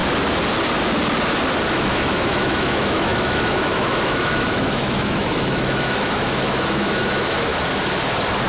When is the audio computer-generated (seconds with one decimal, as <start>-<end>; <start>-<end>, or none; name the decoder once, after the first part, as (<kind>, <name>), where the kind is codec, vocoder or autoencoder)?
1.7-7.5 (autoencoder, DAC-VAE)